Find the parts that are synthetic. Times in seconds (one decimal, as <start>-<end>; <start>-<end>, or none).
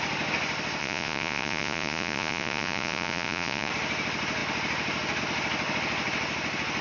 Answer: 0.8-3.7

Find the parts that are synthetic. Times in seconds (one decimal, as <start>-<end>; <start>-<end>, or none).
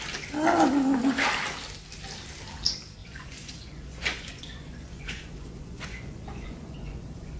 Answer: 3.0-7.4